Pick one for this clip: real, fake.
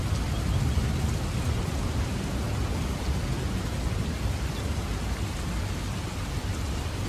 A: real